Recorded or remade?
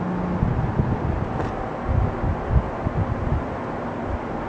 recorded